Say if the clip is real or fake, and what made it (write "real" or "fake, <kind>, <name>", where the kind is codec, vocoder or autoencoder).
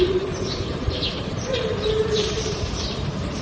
fake, vocoder, BigVGAN v2